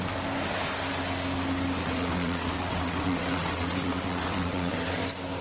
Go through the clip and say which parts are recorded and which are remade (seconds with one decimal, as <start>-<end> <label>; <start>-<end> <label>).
0.0-1.8 recorded; 1.8-5.0 remade; 5.0-5.4 recorded